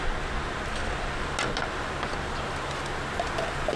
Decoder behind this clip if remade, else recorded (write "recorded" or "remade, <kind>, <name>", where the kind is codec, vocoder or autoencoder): recorded